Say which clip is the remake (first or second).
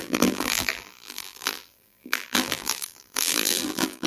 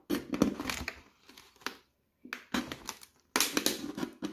first